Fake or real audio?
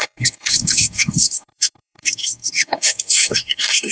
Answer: fake